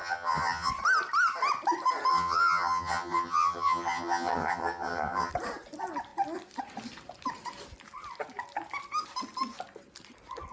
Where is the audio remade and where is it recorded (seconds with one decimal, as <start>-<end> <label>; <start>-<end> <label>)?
0.0-0.7 remade; 0.7-2.1 recorded; 2.1-5.3 remade; 5.3-10.5 recorded

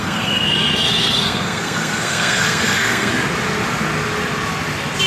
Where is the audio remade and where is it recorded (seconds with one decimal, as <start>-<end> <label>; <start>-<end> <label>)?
0.0-3.1 remade; 3.1-5.1 recorded